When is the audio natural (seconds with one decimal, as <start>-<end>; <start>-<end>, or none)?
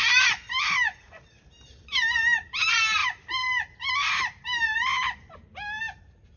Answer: 0.0-6.4